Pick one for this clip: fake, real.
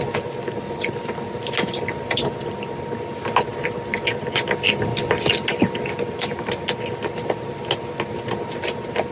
real